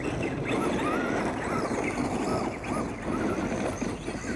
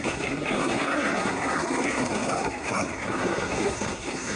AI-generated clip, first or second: second